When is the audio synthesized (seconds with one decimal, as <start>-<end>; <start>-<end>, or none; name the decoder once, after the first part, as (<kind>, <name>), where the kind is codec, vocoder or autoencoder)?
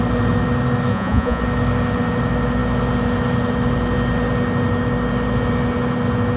0.9-1.4 (vocoder, Vocos)